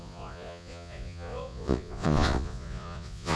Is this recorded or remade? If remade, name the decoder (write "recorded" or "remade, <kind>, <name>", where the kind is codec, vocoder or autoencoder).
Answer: remade, vocoder, Vocos